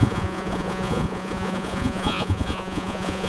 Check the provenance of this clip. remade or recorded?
remade